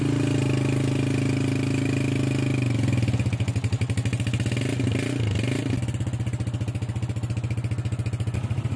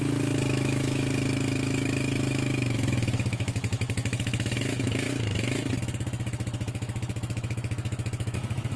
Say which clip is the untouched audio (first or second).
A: first